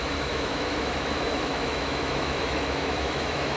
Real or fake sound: fake